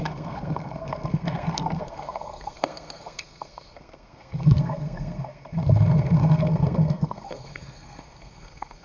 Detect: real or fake fake